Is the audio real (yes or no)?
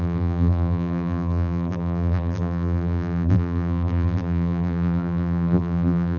no